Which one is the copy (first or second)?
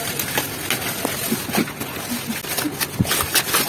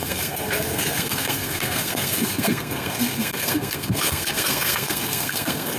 second